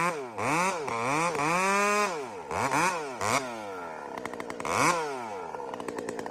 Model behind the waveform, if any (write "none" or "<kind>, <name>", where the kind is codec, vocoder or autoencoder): none